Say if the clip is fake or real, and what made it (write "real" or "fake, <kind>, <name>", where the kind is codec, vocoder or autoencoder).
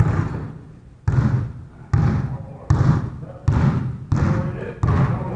real